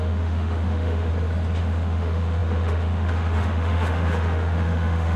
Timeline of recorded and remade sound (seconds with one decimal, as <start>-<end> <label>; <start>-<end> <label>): 0.0-1.1 remade; 1.1-1.6 recorded; 1.6-5.2 remade